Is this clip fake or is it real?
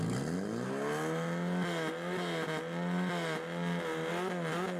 real